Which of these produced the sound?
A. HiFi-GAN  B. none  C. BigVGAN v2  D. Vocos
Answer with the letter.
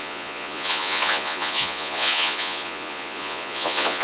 D